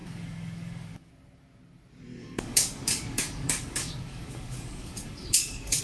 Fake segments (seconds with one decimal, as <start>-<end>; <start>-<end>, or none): 0.0-1.1; 2.2-5.8